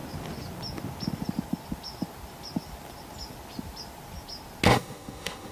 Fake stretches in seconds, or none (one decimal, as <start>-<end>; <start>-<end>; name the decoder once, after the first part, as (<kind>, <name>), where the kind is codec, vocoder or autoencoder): 4.7-5.5 (autoencoder, DAC-VAE)